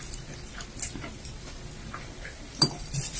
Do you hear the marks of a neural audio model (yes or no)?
no